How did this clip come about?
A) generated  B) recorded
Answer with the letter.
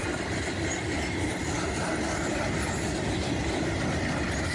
B